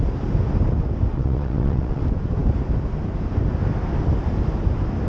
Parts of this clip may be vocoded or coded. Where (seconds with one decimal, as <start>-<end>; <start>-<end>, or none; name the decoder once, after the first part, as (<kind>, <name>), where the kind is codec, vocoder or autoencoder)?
1.1-2.0 (vocoder, WaveNeXt)